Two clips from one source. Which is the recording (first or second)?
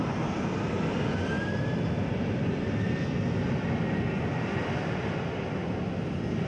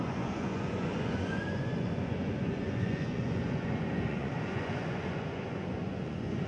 first